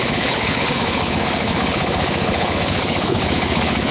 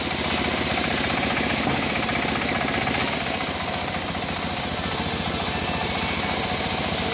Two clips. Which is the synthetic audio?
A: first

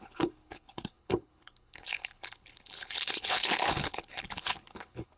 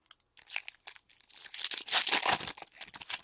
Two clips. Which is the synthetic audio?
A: first